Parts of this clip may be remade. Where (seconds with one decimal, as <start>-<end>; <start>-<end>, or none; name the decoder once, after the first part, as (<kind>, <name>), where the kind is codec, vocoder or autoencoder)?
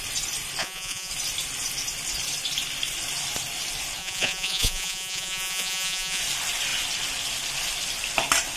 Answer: 0.6-1.1 (vocoder, Vocos); 4.0-6.2